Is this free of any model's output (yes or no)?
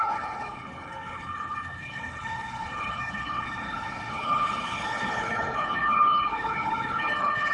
no